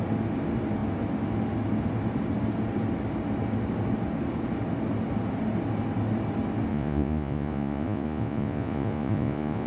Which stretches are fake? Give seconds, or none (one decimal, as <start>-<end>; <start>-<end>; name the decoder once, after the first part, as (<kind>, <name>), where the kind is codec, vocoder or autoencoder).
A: 6.7-9.7 (vocoder, Vocos)